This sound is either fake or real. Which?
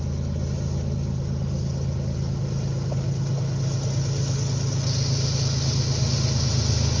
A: real